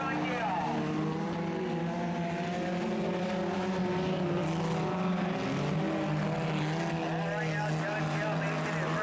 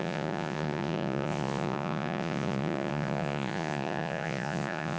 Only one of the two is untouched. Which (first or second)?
first